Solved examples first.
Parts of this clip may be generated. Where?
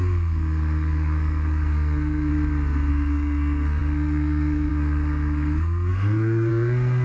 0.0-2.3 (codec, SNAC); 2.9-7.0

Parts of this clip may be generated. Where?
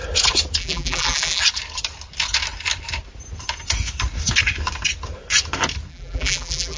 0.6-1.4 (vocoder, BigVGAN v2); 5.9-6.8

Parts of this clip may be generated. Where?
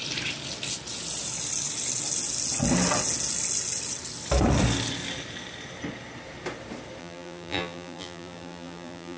7.0-9.2 (vocoder, BigVGAN v2)